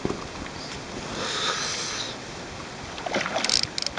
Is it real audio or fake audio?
real